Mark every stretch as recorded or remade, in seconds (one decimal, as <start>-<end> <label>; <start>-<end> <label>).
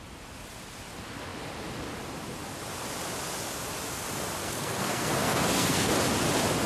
0.0-4.4 recorded; 4.4-5.9 remade; 5.9-6.7 recorded